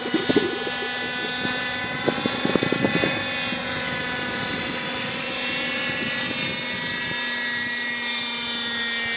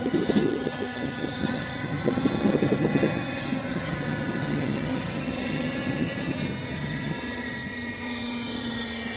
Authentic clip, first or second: first